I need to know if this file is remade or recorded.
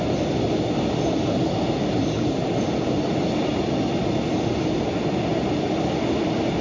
recorded